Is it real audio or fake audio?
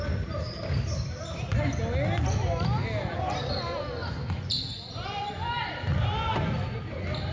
real